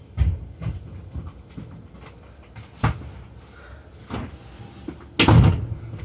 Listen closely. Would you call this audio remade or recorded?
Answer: recorded